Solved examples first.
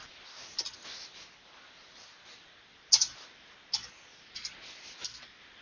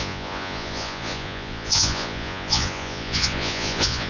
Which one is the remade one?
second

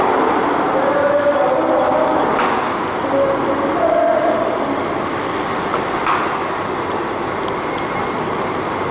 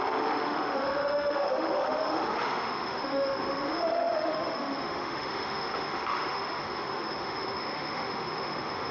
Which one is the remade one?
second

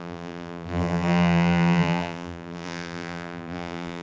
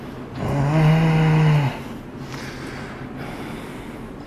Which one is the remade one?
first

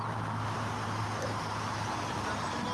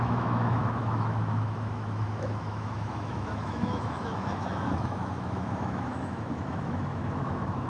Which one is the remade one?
second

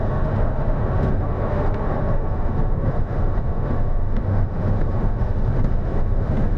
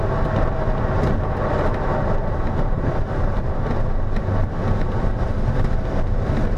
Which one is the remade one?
first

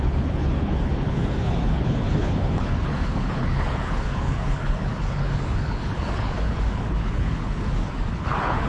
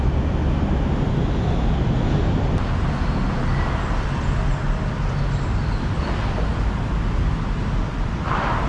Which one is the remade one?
first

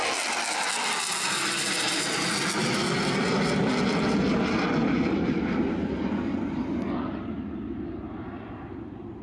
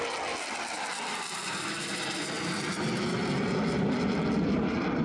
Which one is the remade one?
second